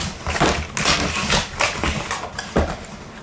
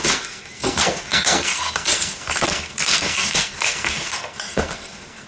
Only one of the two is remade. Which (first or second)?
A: second